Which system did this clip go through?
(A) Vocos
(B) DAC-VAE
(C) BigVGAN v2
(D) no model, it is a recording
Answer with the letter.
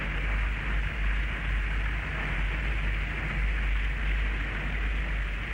D